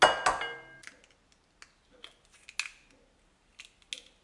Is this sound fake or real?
real